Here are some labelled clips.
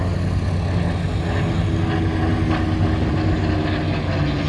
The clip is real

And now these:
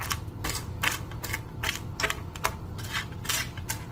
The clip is real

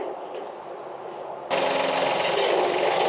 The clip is real